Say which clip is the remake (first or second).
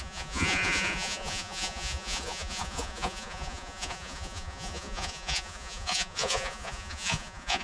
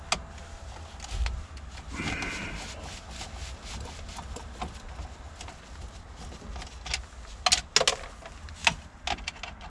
first